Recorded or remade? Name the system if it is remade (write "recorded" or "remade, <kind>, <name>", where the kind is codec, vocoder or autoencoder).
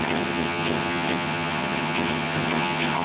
remade, vocoder, HiFi-GAN